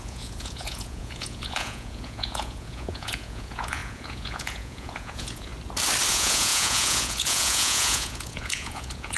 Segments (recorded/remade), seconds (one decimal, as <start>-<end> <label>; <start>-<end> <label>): 0.0-5.5 remade; 5.5-6.1 recorded; 6.1-9.2 remade